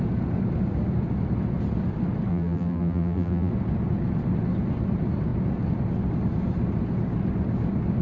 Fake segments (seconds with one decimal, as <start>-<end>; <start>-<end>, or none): 2.3-3.5